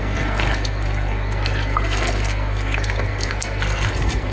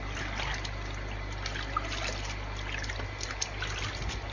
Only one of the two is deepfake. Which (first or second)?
first